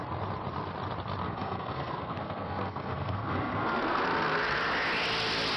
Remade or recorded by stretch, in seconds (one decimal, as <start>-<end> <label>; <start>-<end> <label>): 0.0-1.2 recorded; 1.2-4.6 remade; 4.6-5.6 recorded